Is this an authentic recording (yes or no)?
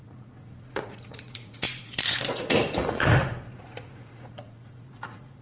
no